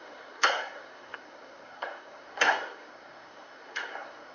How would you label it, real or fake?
fake